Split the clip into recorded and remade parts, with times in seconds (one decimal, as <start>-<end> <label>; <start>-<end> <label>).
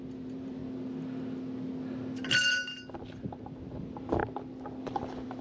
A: 0.0-0.6 remade; 0.6-2.9 recorded; 2.9-4.2 remade; 4.2-4.8 recorded; 4.8-5.4 remade